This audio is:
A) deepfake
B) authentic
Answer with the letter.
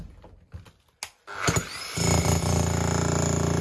B